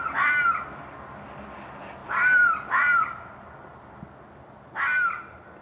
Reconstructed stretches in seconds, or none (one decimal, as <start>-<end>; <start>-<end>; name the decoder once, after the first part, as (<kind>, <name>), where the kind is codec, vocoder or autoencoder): none

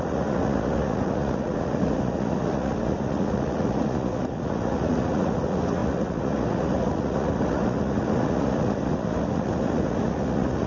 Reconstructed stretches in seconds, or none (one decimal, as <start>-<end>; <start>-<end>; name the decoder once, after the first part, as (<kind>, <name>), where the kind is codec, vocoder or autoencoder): 0.0-10.7 (vocoder, Vocos)